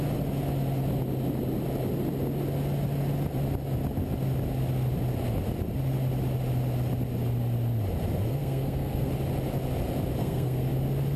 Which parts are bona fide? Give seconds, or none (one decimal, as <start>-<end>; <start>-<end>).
0.0-8.3; 9.1-10.2; 10.7-11.2